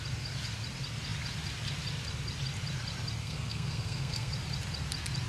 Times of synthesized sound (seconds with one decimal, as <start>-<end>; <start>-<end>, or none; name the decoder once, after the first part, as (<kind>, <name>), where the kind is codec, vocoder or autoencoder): 3.2-4.3 (codec, SNAC)